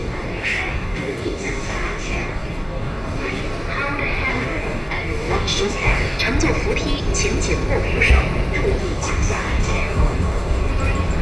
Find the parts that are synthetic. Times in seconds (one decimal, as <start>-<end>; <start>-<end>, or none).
0.0-3.4; 4.3-6.2; 8.8-10.7